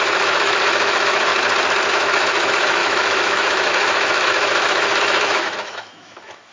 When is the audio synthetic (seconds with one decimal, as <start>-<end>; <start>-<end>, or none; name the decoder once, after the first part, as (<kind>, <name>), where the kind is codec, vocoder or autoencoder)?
0.0-1.3 (autoencoder, DAC-VAE); 1.9-6.5